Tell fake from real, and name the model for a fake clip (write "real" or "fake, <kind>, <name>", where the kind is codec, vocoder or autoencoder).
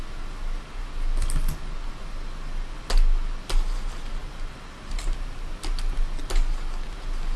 real